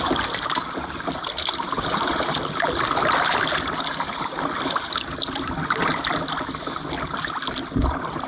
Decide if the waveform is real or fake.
real